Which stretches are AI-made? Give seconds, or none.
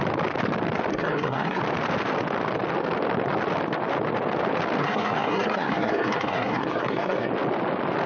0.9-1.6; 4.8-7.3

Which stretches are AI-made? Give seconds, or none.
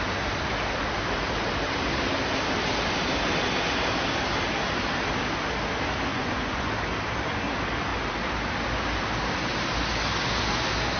6.1-6.7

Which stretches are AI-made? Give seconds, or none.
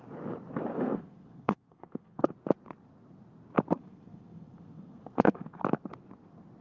0.7-2.3; 3.8-5.6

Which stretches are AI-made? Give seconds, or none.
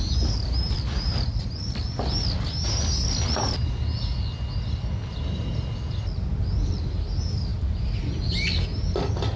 none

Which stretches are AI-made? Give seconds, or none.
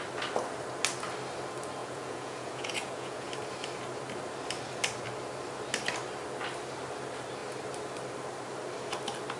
1.8-3.3